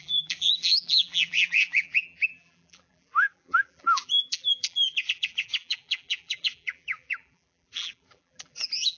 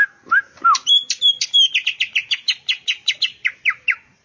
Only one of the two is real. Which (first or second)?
second